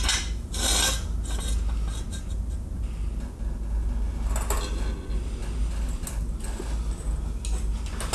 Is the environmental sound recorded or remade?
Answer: recorded